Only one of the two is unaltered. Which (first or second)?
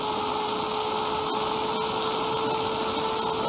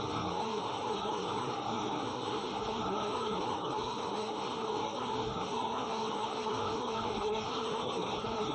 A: first